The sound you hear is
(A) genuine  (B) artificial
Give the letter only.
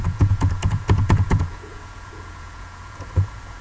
B